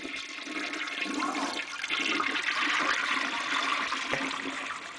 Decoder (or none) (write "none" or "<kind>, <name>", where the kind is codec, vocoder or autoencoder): none